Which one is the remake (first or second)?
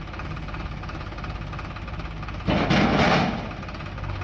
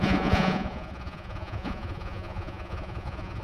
second